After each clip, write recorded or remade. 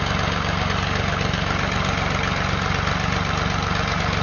recorded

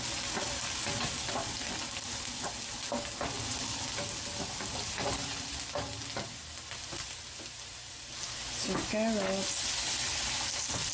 recorded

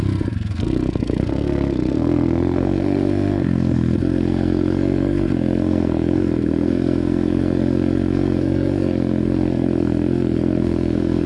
remade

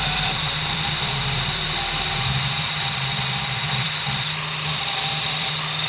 remade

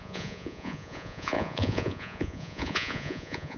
remade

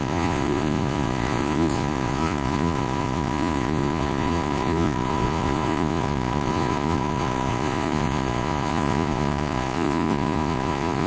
remade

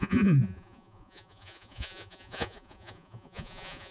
remade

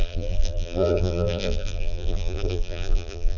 remade